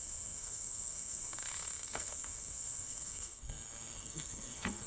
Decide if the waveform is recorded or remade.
remade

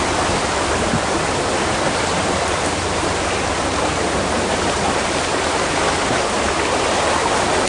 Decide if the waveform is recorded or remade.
recorded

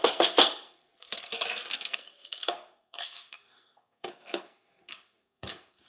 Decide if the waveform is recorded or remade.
remade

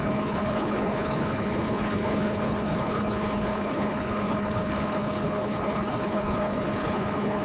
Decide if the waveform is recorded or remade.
remade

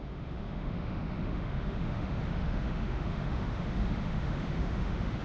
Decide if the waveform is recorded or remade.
remade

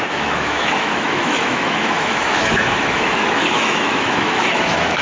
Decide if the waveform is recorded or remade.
remade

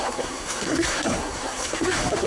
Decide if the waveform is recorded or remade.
remade